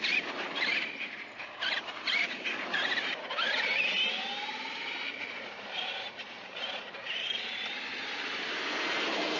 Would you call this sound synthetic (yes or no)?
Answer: yes